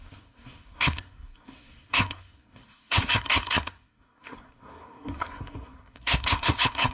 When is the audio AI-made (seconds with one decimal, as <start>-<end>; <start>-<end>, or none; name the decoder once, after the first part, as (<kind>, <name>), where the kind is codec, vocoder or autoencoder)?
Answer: 0.0-6.9 (codec, SNAC)